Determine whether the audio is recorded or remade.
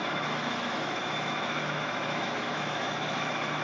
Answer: remade